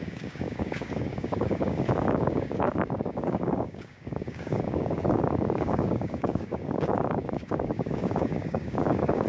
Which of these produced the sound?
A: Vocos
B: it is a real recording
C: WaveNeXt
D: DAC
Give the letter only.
D